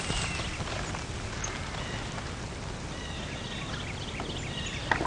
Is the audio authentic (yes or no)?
yes